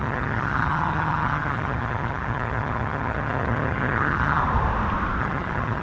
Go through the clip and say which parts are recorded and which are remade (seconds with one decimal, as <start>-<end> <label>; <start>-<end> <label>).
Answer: 0.0-4.4 remade; 4.4-5.2 recorded; 5.2-5.8 remade